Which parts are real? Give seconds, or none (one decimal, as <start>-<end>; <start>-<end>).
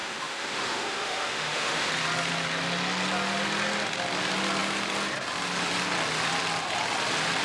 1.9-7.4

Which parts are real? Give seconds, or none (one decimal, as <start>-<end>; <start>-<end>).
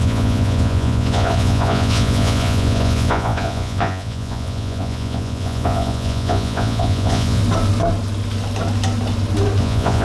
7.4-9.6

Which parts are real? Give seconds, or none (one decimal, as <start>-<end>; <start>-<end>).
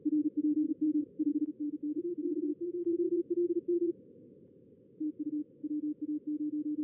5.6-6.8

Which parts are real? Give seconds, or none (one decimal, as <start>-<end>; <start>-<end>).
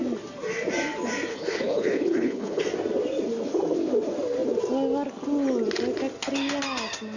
0.0-1.3; 2.6-7.2